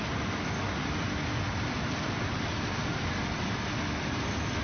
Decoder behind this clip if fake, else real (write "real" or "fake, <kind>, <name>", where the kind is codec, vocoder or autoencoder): real